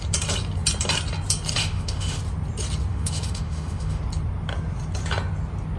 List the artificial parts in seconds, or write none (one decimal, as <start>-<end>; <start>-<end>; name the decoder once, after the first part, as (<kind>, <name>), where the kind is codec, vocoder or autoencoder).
1.6-2.2 (autoencoder, DAC-VAE); 2.9-4.0